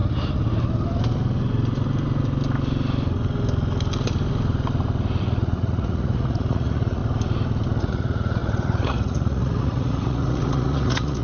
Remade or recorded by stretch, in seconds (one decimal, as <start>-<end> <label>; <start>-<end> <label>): 0.0-5.2 recorded; 5.2-7.0 remade; 7.0-7.8 recorded; 7.8-11.2 remade